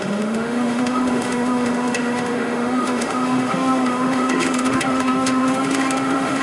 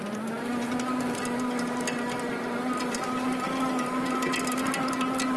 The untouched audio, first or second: second